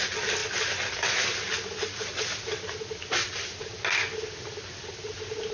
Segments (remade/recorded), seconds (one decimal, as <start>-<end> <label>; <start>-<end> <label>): 0.0-5.5 recorded